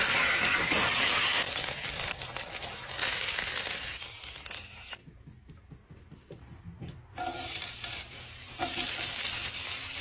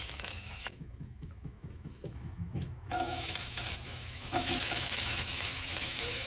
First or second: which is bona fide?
first